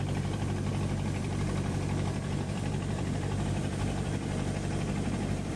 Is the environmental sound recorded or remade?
remade